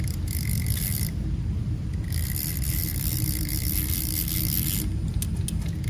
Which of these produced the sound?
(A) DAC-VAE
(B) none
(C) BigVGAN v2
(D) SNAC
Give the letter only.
B